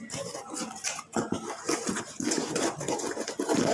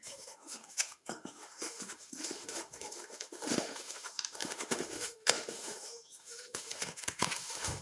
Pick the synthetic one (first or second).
second